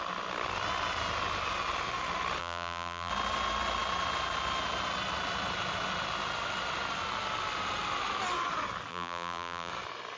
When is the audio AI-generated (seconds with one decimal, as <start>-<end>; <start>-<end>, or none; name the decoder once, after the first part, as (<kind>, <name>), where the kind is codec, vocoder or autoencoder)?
2.4-3.1 (vocoder, BigVGAN v2); 8.9-9.7